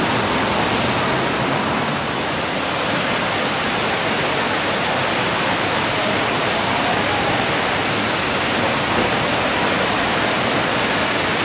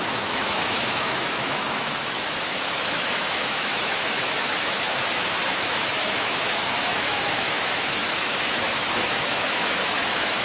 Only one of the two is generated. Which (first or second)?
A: second